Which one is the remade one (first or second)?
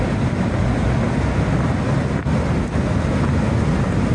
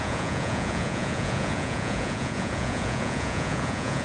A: second